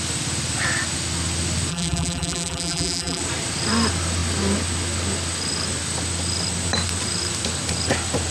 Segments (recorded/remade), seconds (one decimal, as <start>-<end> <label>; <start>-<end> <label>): 0.0-1.7 recorded; 1.7-3.2 remade; 3.2-8.3 recorded